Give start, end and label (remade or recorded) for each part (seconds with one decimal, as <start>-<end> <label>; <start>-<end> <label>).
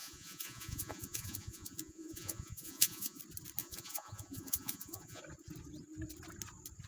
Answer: 0.0-3.2 remade; 3.2-3.6 recorded; 3.6-5.2 remade; 5.2-6.9 recorded